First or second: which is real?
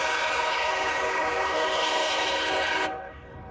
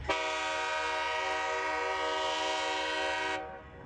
second